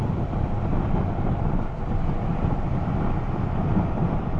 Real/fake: real